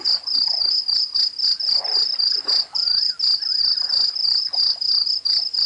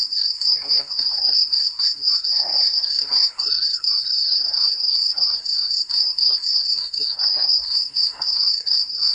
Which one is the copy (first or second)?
second